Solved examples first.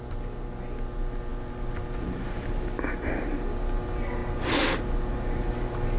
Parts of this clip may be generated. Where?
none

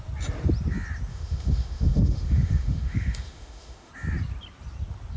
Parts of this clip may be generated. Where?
1.1-3.9

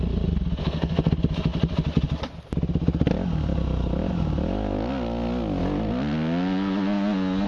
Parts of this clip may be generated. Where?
0.6-1.1

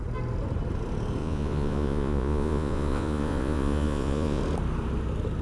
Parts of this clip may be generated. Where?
1.2-4.4

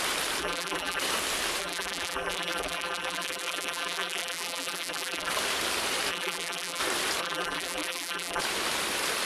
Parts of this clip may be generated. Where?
0.4-1.0; 1.6-5.3; 6.1-6.8; 7.2-8.4

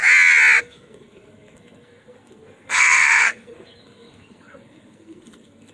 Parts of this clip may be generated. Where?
0.6-5.7

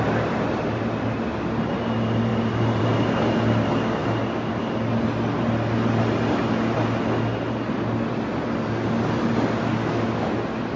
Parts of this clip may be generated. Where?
9.8-10.4